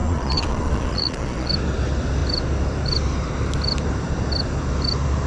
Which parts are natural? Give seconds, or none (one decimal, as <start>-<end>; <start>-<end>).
1.5-5.3